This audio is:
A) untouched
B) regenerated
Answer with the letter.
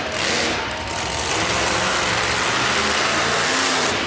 A